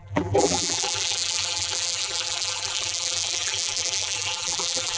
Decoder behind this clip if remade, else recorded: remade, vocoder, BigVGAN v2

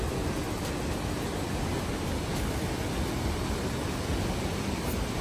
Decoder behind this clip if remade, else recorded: recorded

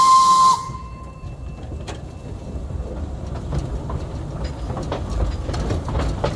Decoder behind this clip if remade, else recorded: recorded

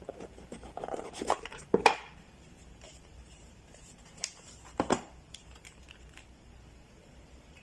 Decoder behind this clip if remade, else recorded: remade, vocoder, BigVGAN v2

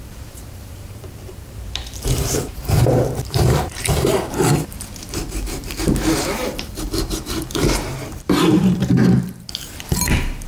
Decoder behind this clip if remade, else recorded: remade, vocoder, BigVGAN v2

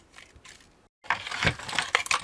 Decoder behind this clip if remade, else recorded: recorded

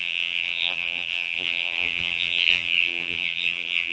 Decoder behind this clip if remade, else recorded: remade, vocoder, BigVGAN v2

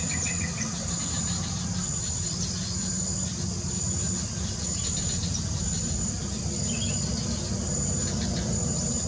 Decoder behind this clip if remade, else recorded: recorded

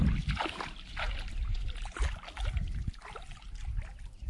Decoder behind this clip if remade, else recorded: recorded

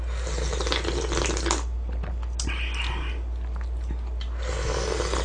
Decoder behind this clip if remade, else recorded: recorded